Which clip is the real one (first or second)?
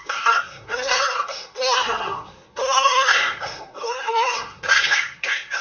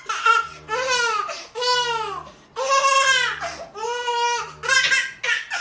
second